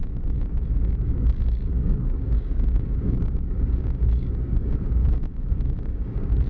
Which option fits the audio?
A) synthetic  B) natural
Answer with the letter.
A